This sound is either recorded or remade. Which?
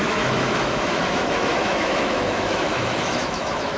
remade